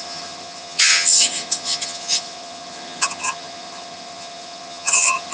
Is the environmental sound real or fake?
fake